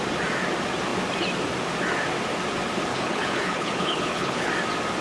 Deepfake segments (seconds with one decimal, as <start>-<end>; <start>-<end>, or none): 2.9-4.5